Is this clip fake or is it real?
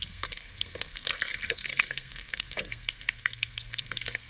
fake